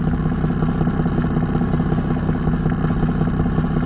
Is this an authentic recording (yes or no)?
yes